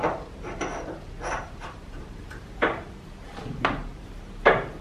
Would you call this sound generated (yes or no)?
yes